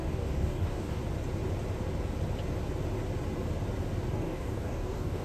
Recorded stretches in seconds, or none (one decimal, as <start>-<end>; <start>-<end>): 1.0-4.1